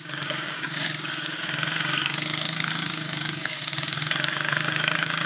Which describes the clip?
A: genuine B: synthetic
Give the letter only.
B